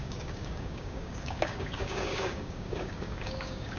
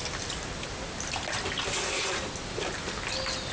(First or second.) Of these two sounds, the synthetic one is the first